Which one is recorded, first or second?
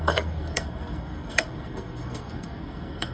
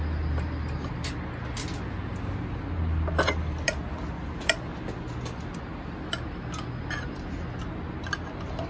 second